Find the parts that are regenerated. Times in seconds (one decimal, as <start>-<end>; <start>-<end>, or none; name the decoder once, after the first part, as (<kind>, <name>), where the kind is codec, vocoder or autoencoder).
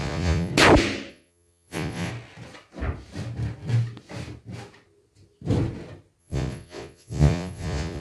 0.0-0.5 (vocoder, Vocos); 1.1-2.1; 6.2-8.0